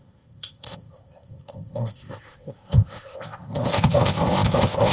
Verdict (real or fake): fake